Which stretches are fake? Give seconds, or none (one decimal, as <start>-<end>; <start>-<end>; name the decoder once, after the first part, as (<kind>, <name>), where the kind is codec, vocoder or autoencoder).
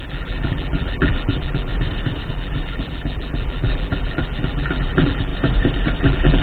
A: 0.0-1.7 (vocoder, BigVGAN v2); 2.3-5.3; 6.0-6.4